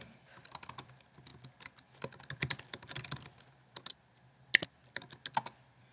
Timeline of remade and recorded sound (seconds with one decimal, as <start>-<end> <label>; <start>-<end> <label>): 0.0-5.9 recorded